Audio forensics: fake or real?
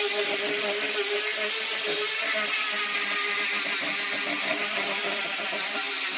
real